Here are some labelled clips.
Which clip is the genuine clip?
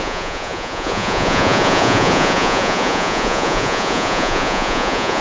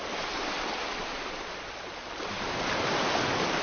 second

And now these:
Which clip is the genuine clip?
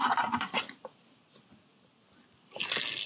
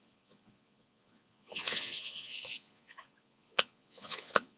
first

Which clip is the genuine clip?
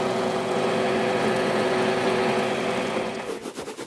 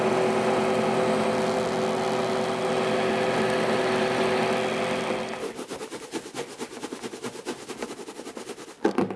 second